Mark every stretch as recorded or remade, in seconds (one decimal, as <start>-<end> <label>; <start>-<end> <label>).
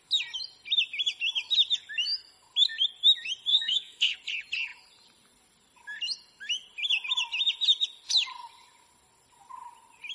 0.0-3.5 recorded; 3.5-4.1 remade; 4.1-10.1 recorded